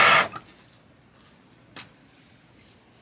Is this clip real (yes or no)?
yes